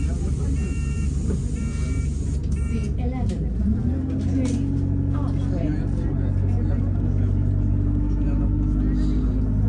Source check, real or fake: real